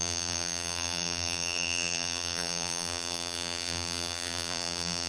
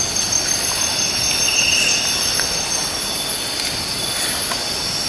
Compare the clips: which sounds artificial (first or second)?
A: first